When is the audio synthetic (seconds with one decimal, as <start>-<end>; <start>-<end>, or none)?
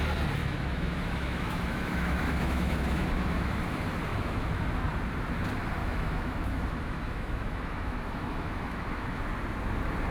0.4-3.6; 4.1-4.6; 5.8-9.2